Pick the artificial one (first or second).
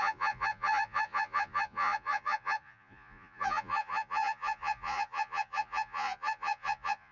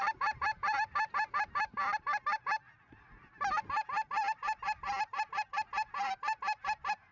first